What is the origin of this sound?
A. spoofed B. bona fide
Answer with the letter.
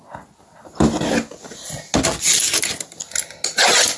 B